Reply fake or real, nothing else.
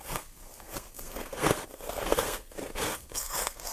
fake